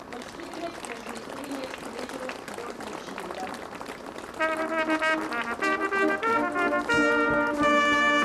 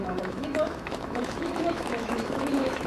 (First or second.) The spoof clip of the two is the second